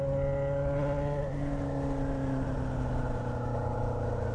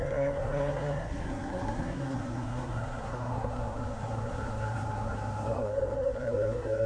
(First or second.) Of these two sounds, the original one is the first